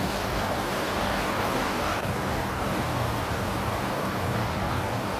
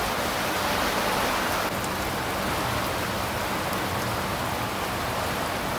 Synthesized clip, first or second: first